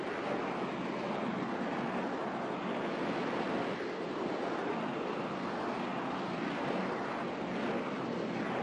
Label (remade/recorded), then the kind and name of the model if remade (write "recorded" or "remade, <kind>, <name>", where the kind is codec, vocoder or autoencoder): recorded